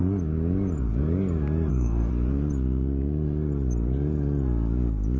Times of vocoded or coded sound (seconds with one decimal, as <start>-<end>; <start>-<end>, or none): 1.7-2.1